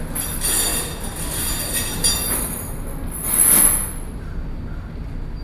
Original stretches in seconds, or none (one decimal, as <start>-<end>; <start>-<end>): 0.0-5.4